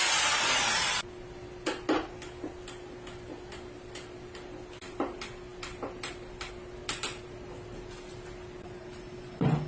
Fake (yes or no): no